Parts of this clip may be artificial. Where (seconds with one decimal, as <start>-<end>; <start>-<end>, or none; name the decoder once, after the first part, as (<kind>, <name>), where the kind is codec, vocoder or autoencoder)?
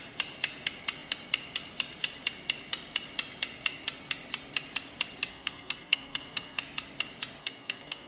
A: 5.3-6.6 (codec, SNAC); 7.4-8.1